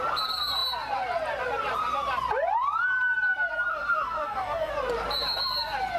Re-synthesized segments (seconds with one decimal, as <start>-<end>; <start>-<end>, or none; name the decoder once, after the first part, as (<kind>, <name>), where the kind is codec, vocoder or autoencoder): 3.7-4.7 (codec, DAC)